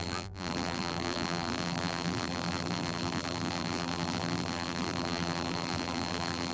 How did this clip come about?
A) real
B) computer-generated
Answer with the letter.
B